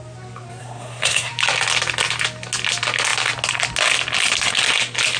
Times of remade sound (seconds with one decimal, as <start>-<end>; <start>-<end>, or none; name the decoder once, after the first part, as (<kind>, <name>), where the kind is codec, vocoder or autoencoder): 0.6-1.3 (codec, SNAC)